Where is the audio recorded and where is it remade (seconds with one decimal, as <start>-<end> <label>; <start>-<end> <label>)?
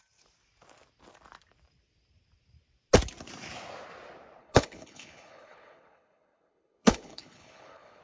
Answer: 0.0-4.4 recorded; 4.4-8.0 remade